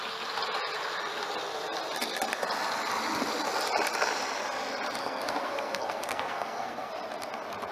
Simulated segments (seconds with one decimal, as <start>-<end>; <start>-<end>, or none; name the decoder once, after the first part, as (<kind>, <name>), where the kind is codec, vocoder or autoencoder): 5.0-6.9 (codec, SNAC)